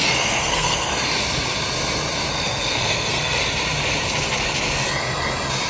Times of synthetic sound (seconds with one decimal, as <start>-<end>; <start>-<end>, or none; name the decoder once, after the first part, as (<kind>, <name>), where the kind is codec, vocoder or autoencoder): 0.0-0.9 (codec, SNAC); 2.3-3.4